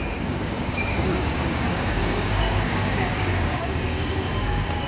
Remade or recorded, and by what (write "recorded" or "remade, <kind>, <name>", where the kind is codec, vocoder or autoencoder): remade, codec, DAC